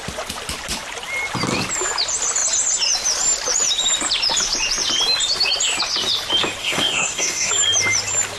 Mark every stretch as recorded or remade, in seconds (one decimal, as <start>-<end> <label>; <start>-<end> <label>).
0.0-6.6 recorded; 6.6-7.5 remade; 7.5-8.4 recorded